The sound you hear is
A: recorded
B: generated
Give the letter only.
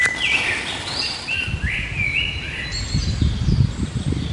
A